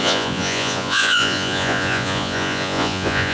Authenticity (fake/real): fake